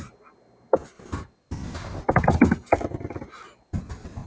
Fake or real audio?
real